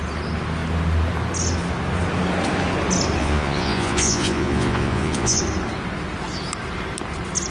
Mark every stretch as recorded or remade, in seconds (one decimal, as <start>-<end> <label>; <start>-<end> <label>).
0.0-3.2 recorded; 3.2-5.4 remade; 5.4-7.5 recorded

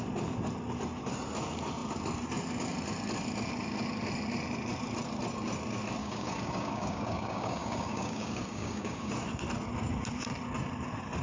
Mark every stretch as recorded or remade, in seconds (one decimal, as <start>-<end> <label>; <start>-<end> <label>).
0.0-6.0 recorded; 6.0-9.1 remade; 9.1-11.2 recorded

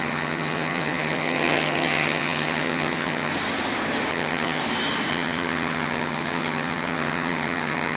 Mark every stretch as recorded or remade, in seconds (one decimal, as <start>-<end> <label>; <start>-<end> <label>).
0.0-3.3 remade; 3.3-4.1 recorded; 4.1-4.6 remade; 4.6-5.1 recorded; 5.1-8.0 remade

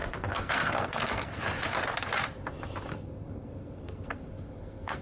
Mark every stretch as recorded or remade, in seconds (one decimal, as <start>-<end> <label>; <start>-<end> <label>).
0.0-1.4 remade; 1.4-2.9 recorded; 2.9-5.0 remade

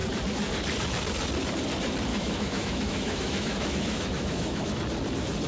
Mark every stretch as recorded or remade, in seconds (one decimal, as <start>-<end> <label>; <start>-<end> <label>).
0.0-2.1 recorded; 2.1-4.8 remade; 4.8-5.5 recorded

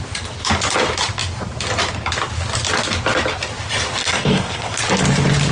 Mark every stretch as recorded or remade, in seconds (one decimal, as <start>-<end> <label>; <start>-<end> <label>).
0.0-4.0 recorded; 4.0-4.8 remade; 4.8-5.5 recorded

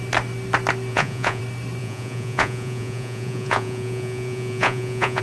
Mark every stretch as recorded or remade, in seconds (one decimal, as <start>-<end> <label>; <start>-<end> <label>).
0.0-0.9 recorded; 0.9-1.4 remade; 1.4-1.8 recorded; 1.8-5.2 remade

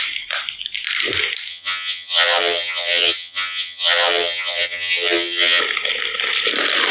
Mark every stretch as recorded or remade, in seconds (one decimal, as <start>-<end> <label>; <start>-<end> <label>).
0.0-1.5 recorded; 1.5-5.6 remade; 5.6-6.9 recorded